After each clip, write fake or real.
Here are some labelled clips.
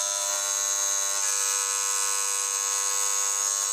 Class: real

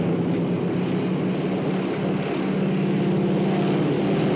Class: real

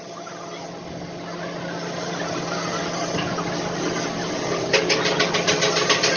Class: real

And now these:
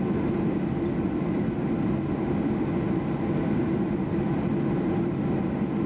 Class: real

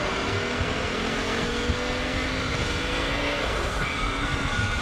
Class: fake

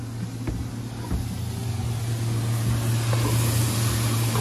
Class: real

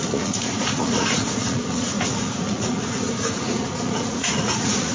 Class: fake